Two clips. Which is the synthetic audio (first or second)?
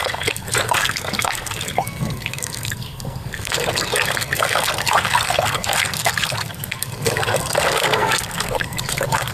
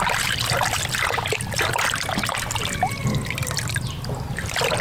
first